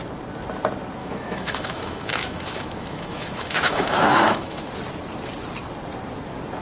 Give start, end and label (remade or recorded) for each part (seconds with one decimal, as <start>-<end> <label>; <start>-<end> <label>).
0.0-1.0 recorded; 1.0-4.7 remade; 4.7-6.6 recorded